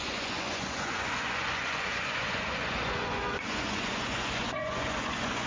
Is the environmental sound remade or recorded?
remade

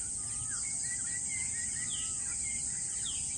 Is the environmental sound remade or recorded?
recorded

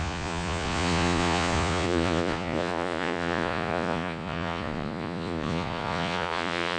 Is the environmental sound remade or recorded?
remade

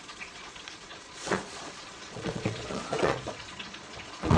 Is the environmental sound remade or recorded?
remade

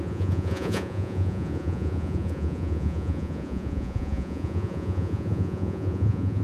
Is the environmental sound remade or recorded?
remade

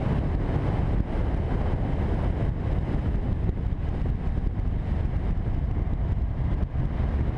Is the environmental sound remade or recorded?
recorded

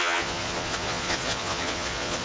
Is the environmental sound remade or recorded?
remade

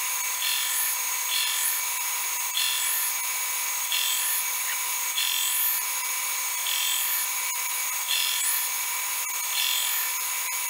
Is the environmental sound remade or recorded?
recorded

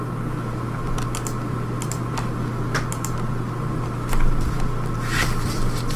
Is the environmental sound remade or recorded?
recorded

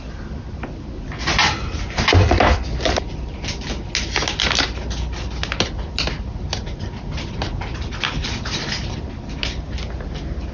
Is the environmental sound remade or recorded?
recorded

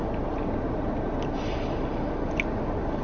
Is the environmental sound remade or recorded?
recorded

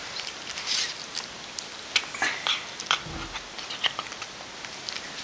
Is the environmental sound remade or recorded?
recorded